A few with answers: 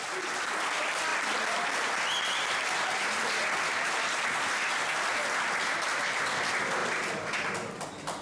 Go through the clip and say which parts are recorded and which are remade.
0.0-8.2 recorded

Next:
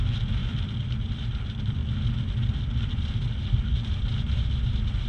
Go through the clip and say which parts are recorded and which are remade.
0.0-1.8 remade; 1.8-2.8 recorded; 2.8-3.2 remade; 3.2-3.9 recorded; 3.9-5.1 remade

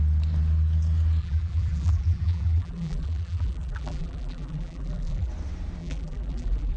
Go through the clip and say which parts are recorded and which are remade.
0.0-1.2 recorded; 1.2-5.3 remade; 5.3-5.8 recorded; 5.8-6.8 remade